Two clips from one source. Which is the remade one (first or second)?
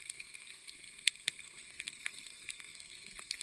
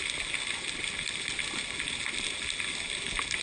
first